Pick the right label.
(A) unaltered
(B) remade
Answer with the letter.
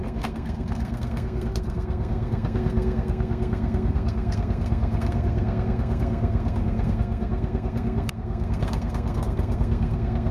B